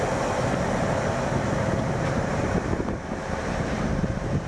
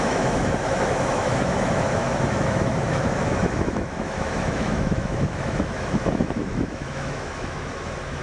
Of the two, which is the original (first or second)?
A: first